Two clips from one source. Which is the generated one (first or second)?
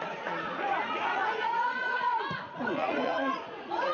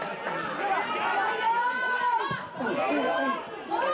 first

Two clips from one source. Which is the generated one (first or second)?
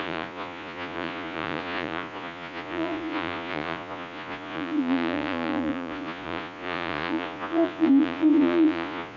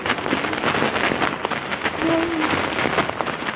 first